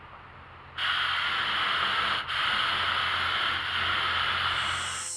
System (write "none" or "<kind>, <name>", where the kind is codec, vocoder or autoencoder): none